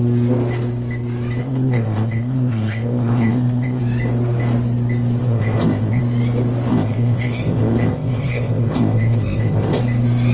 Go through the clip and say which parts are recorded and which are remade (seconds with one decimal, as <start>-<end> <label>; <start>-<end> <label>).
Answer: 0.0-1.4 recorded; 1.4-3.8 remade; 3.8-5.2 recorded; 5.2-6.0 remade; 6.0-6.7 recorded; 6.7-9.8 remade; 9.8-10.3 recorded